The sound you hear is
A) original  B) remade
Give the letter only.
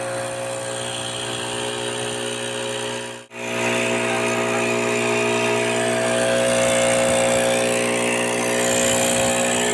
A